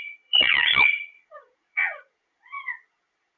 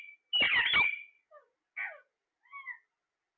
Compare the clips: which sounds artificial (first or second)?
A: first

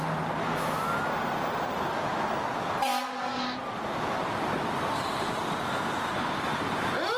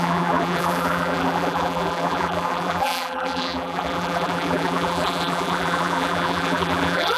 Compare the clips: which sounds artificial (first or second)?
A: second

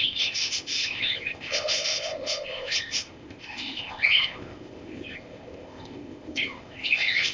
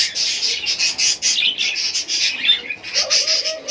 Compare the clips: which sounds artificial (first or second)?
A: first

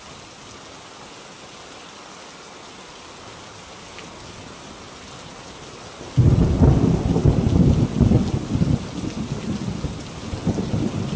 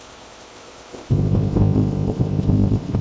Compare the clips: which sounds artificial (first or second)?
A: second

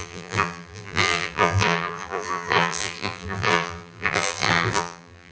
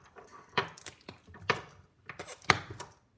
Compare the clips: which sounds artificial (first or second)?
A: first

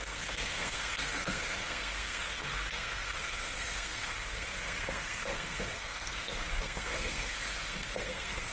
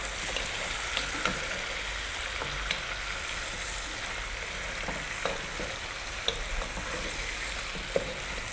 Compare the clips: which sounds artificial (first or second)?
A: first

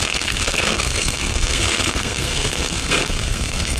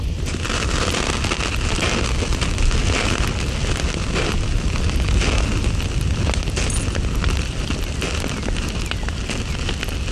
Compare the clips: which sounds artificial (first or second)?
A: first